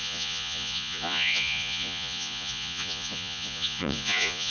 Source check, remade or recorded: remade